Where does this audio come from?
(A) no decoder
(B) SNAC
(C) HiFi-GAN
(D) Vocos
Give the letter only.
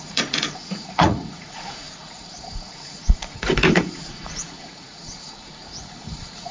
D